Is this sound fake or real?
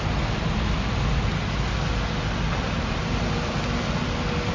real